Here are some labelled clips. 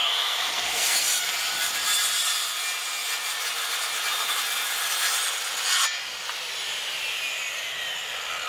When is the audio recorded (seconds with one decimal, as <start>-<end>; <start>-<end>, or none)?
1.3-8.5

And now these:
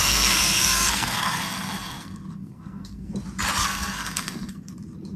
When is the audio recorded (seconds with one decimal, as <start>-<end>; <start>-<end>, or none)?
3.1-3.6; 4.7-5.2

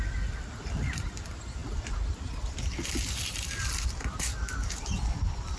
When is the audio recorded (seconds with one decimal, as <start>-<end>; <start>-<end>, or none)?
none

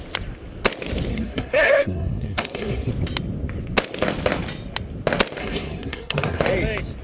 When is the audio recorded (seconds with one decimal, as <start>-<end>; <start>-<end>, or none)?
0.0-1.1; 2.9-5.4; 6.4-7.0

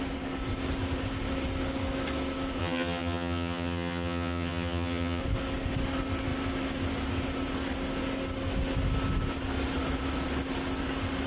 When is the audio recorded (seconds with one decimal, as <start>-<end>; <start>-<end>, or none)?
0.0-2.6; 5.2-11.3

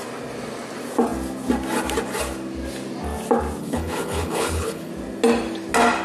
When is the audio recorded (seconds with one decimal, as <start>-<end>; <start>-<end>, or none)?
0.0-3.6; 4.9-6.0

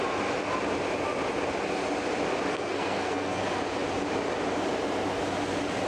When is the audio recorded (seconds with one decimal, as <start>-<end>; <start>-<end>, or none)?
0.0-2.5; 3.4-5.9